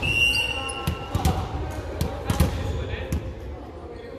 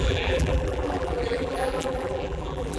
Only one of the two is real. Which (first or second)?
first